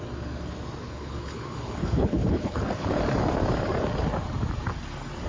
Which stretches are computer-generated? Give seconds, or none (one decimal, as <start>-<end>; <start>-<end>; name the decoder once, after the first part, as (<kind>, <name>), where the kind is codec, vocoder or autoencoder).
0.8-3.0 (codec, HILCodec)